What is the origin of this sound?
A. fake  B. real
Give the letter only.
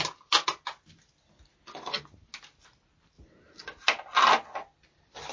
B